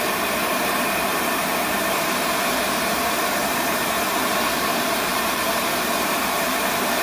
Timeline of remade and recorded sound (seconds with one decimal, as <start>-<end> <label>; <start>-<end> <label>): 0.0-7.0 remade